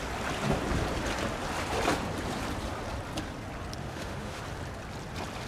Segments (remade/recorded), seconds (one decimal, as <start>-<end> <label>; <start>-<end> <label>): 0.0-3.8 recorded; 3.8-4.4 remade; 4.4-5.5 recorded